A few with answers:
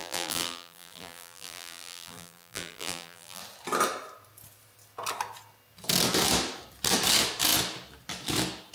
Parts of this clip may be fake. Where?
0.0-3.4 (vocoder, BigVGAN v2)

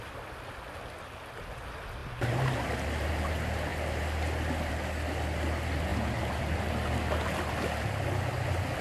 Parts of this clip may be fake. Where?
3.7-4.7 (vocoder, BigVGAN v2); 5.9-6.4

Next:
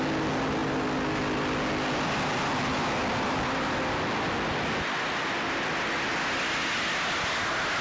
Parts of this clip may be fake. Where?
none